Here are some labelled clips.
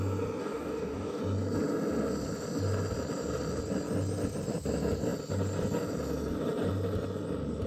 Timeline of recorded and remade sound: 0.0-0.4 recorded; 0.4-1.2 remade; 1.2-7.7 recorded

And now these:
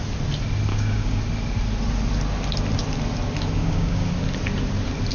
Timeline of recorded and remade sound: 0.0-0.7 recorded; 0.7-1.2 remade; 1.2-3.6 recorded; 3.6-4.1 remade; 4.1-5.1 recorded

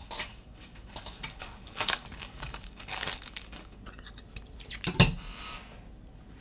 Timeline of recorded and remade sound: 0.0-3.8 remade; 3.8-6.4 recorded

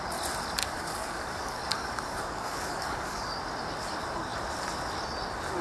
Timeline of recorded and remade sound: 0.0-0.6 recorded; 0.6-3.4 remade; 3.4-5.6 recorded

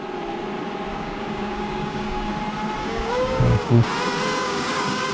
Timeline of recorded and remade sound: 0.0-0.9 recorded; 0.9-2.3 remade; 2.3-2.8 recorded; 2.8-3.9 remade; 3.9-4.4 recorded; 4.4-5.1 remade